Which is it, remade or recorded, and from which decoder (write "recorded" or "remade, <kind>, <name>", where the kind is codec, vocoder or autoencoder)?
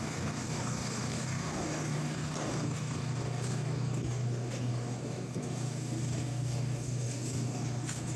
remade, codec, DAC